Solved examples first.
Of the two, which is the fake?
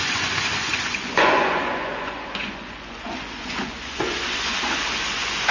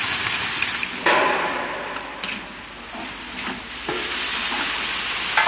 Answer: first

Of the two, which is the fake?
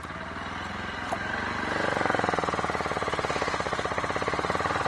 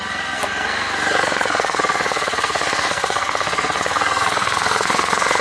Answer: second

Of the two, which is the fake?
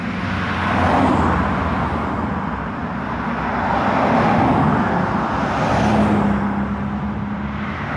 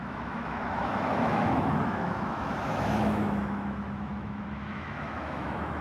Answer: second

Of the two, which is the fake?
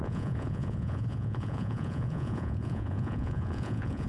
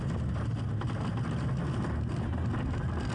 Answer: first